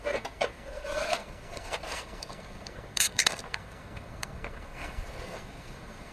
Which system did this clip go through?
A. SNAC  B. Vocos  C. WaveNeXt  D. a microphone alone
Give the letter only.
A